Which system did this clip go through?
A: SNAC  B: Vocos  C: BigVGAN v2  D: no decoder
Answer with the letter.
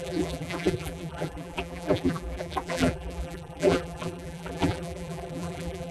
C